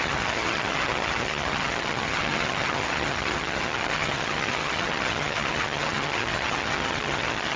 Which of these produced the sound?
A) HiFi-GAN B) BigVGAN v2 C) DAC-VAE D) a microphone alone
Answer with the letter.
A